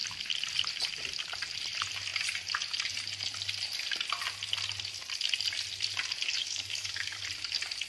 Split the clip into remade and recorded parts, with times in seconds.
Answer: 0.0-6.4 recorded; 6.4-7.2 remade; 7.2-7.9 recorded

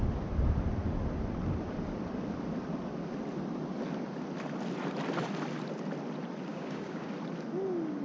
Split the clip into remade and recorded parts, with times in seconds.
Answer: 0.0-6.5 recorded; 6.5-7.1 remade; 7.1-8.0 recorded

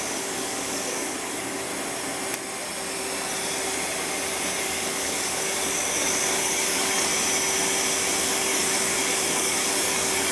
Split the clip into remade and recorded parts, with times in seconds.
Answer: 0.0-1.7 remade; 1.7-4.6 recorded; 4.6-7.1 remade; 7.1-8.2 recorded; 8.2-10.3 remade

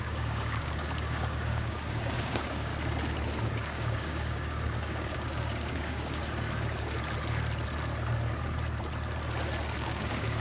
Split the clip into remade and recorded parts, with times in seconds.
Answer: 0.0-2.7 remade; 2.7-3.4 recorded; 3.4-6.2 remade; 6.2-9.8 recorded; 9.8-10.4 remade

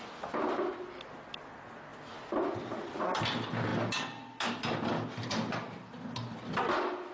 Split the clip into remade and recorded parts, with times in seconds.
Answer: 0.0-7.1 recorded

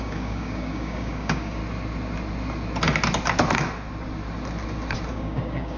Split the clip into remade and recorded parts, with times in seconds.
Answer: 0.0-1.6 remade; 1.6-5.1 recorded; 5.1-5.8 remade